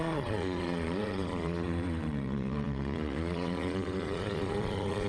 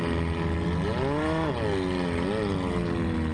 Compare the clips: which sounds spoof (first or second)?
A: first